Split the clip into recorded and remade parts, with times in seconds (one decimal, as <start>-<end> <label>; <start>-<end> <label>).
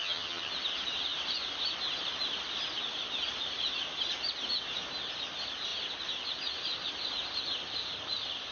0.0-0.5 remade; 0.5-8.5 recorded